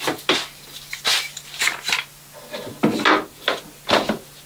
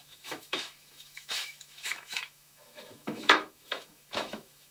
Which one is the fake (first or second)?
second